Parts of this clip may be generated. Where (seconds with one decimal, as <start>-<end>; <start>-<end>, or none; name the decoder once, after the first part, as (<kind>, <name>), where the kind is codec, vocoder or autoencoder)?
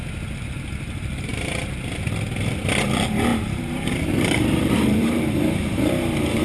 3.3-5.9 (vocoder, BigVGAN v2)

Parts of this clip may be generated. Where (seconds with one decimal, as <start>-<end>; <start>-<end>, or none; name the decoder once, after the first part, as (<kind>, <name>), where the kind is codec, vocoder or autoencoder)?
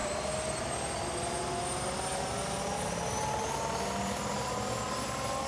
none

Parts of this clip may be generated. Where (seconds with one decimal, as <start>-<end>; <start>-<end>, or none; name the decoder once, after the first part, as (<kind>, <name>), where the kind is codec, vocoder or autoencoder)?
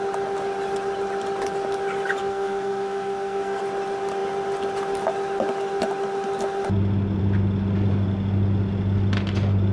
2.2-3.6 (codec, SNAC)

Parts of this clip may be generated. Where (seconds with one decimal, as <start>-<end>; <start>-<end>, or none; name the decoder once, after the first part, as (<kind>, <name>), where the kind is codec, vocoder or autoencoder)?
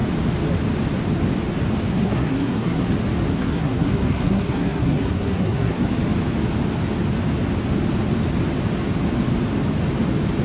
1.9-2.9 (codec, SNAC); 3.3-5.9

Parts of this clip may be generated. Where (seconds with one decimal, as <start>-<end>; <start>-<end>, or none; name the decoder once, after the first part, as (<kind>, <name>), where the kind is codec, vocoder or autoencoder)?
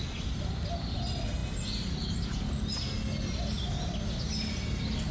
1.4-2.4 (vocoder, BigVGAN v2)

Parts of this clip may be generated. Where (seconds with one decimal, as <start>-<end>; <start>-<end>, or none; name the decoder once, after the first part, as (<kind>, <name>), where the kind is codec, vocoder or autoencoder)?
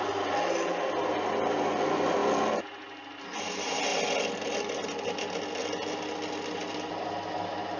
none